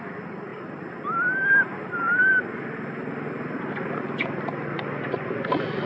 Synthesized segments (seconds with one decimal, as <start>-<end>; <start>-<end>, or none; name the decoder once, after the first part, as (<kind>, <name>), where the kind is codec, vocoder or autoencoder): none